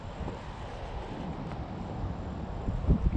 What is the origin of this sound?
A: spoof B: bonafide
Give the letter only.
B